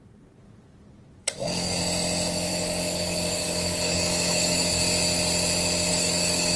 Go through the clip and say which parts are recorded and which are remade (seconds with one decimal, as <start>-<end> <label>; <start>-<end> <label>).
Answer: 0.0-1.2 recorded; 1.2-1.8 remade; 1.8-2.5 recorded; 2.5-4.8 remade; 4.8-5.9 recorded; 5.9-6.6 remade